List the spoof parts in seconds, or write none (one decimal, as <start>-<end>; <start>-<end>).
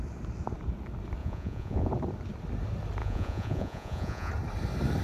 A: 1.2-1.9; 3.0-4.3